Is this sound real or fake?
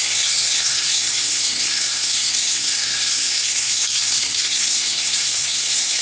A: fake